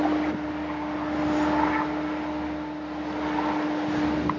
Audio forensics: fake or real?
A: real